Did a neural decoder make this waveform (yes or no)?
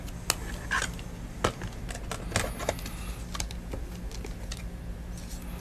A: no